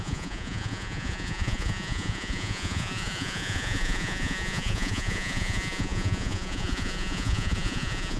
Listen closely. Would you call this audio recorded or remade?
remade